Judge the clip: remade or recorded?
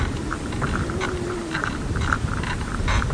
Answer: remade